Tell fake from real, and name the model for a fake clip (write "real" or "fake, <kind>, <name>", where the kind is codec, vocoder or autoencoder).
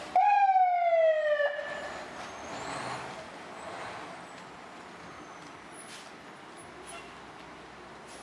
real